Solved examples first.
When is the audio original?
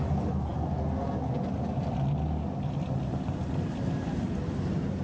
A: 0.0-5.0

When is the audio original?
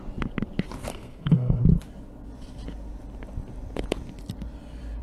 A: 0.0-0.9; 1.6-5.0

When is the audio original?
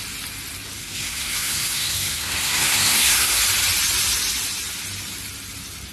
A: 0.0-0.8; 3.4-5.9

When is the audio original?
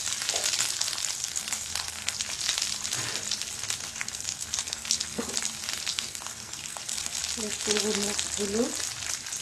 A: 0.0-1.2; 2.2-4.0; 5.3-5.9; 7.2-9.4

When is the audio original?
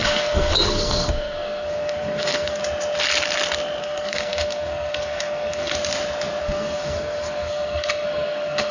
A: 2.6-3.8; 5.7-6.4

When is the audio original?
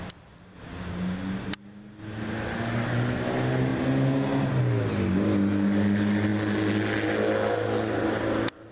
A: 0.0-8.7